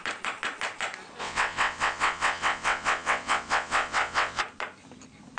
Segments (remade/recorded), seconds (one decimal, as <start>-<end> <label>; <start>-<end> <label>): 0.0-1.2 recorded; 1.2-4.4 remade; 4.4-5.4 recorded